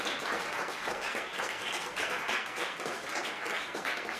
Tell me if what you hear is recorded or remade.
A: remade